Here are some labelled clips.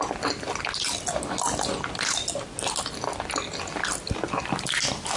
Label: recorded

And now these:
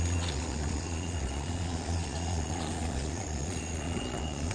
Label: remade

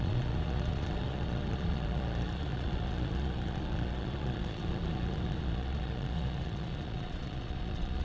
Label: remade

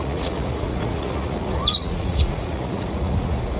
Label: remade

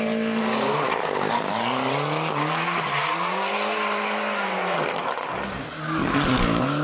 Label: recorded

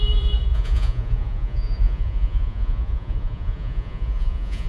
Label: remade